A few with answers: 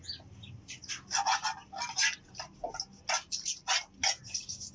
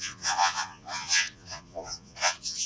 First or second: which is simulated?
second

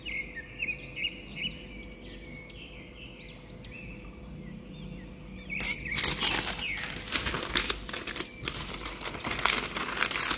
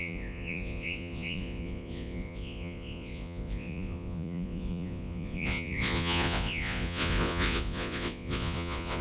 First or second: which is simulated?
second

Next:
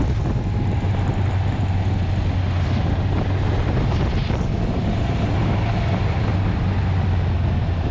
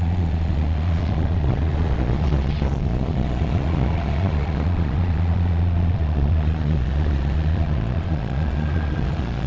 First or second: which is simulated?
second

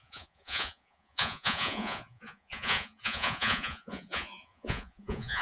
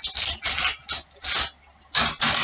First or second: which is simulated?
first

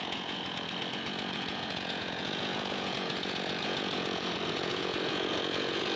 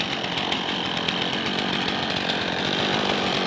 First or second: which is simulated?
first